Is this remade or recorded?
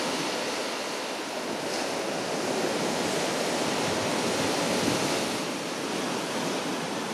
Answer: recorded